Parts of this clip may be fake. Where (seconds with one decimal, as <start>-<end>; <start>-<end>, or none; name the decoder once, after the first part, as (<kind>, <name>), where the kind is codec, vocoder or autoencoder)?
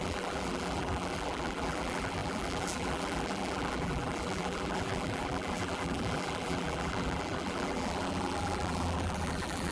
0.0-9.7 (vocoder, BigVGAN v2)